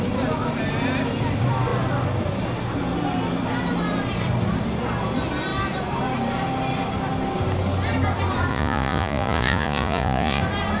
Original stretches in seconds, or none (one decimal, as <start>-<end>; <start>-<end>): 0.0-8.5; 10.4-10.8